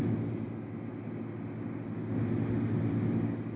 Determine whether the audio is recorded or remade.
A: recorded